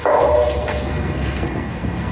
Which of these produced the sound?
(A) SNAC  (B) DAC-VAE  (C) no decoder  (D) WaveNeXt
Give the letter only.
A